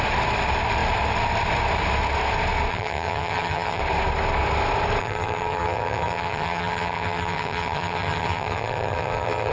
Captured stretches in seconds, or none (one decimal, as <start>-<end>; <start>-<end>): 0.0-2.7; 3.8-5.0